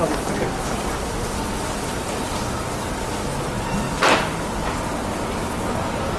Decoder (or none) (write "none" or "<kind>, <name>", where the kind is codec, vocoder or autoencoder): none